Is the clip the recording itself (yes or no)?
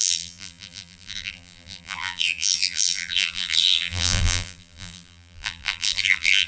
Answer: no